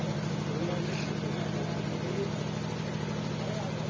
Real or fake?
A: real